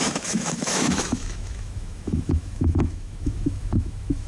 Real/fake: fake